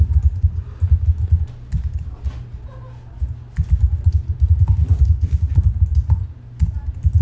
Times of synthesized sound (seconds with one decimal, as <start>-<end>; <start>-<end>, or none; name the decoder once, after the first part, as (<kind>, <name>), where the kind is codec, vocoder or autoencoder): none